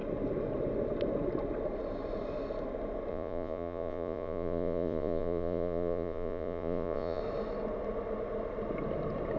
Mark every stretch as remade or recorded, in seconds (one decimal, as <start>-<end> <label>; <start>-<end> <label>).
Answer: 0.0-3.1 recorded; 3.1-7.2 remade; 7.2-9.4 recorded